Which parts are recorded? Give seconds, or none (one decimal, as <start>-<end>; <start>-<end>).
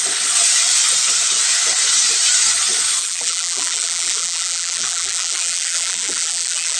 0.0-3.0